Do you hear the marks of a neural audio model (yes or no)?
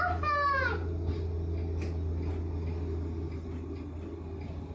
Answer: no